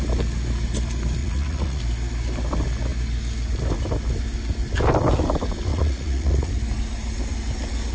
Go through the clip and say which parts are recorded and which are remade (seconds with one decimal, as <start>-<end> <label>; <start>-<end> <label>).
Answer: 0.0-1.2 recorded; 1.2-1.8 remade; 1.8-5.7 recorded; 5.7-6.5 remade; 6.5-7.9 recorded